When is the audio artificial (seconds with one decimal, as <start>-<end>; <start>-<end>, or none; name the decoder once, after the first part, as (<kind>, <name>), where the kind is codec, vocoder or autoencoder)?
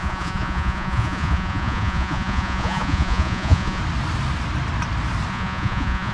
0.0-3.8 (vocoder, Vocos); 5.3-6.1